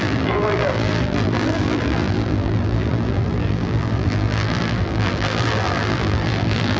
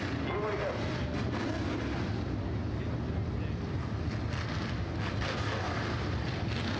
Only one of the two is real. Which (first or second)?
second